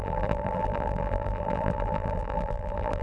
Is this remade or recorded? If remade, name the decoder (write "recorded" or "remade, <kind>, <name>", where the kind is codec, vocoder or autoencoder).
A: remade, vocoder, BigVGAN v2